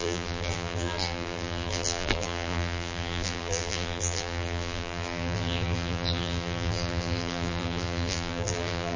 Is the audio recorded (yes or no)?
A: no